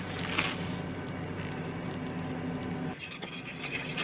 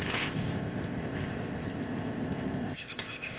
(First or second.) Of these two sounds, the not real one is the second